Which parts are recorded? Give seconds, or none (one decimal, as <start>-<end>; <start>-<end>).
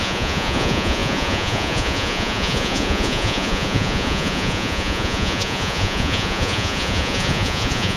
none